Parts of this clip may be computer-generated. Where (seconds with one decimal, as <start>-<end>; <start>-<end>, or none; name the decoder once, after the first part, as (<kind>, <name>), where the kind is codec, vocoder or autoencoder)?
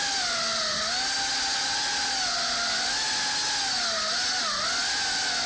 none